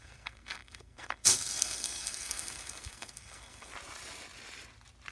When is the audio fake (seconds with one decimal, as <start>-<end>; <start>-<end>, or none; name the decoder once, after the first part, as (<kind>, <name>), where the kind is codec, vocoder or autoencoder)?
0.0-3.7 (codec, SNAC)